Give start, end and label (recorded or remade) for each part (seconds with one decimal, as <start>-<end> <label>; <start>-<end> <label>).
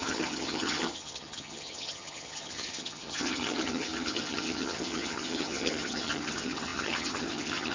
0.0-7.7 remade